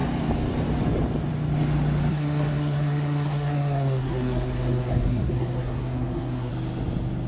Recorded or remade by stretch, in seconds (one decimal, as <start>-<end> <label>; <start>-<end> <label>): 0.0-2.1 recorded; 2.1-6.5 remade; 6.5-7.3 recorded